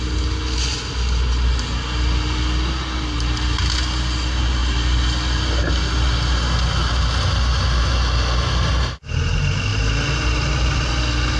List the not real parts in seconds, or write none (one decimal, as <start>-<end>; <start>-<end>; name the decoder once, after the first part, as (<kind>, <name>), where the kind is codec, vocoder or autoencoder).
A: none